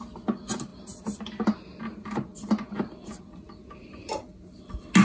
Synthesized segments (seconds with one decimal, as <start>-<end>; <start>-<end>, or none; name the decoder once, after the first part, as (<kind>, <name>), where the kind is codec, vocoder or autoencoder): none